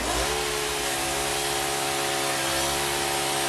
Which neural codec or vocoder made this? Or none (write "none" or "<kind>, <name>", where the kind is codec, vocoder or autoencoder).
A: none